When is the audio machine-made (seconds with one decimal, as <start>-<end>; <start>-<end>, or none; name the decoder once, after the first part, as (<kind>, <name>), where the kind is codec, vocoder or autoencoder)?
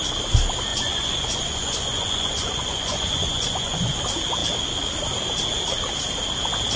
0.7-4.0 (vocoder, Vocos)